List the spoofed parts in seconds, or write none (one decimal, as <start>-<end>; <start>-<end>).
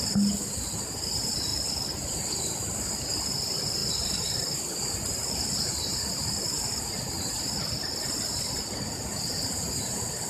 none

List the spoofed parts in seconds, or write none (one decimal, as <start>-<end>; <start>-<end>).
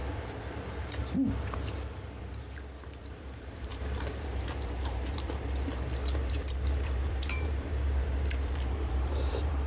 3.0-9.7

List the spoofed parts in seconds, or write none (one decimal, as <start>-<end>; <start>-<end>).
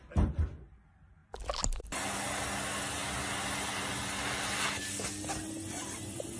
none